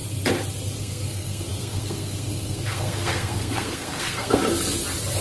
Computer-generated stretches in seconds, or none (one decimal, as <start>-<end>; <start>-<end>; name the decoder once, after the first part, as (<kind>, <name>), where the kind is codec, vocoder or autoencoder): 0.8-4.4 (codec, SNAC)